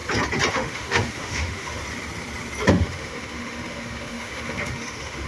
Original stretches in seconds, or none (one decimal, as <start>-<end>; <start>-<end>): 0.0-0.5; 1.8-2.7